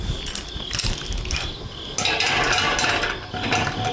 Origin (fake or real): real